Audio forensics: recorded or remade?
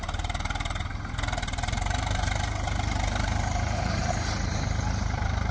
remade